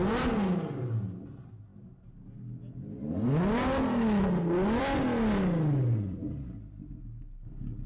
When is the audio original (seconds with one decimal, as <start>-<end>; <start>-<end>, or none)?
0.0-7.9